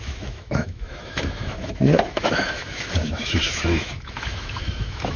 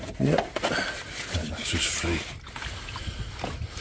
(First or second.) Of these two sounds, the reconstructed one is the first